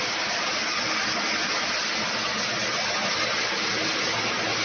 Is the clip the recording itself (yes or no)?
yes